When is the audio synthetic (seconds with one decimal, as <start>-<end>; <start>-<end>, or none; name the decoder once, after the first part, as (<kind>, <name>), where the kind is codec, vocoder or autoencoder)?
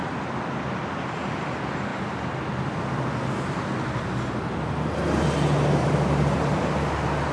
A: none